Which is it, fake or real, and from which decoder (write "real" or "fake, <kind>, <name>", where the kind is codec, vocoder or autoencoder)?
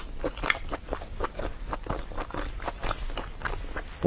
real